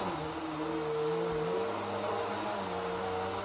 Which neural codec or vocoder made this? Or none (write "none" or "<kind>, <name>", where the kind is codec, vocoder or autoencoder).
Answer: none